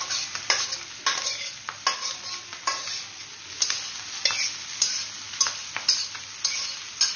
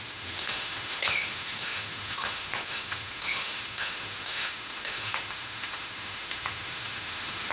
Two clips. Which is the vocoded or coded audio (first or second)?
second